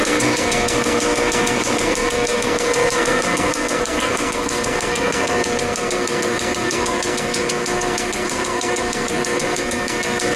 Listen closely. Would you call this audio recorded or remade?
remade